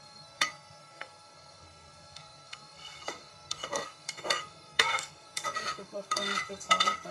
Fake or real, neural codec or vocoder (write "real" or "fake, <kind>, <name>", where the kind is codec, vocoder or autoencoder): fake, codec, SNAC